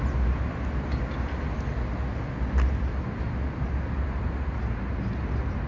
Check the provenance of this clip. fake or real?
real